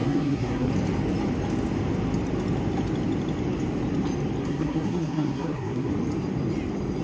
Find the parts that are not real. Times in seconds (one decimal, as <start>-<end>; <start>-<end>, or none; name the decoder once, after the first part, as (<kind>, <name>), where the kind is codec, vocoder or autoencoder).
0.0-0.7 (codec, SNAC); 4.4-5.9